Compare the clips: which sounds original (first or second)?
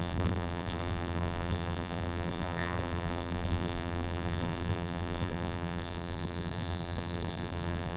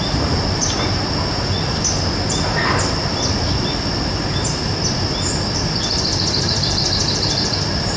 second